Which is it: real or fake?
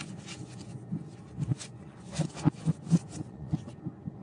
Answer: fake